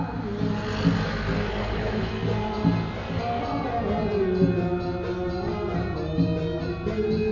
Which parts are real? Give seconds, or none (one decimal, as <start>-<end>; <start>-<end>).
0.0-1.6; 2.1-7.3